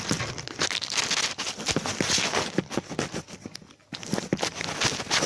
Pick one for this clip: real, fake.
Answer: real